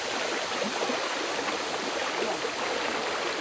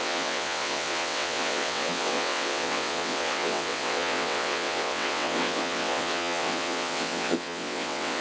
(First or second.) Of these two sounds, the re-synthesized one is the second